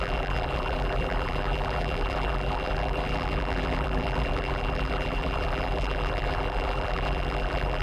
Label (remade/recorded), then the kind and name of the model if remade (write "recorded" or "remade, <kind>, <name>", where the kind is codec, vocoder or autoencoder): remade, vocoder, BigVGAN v2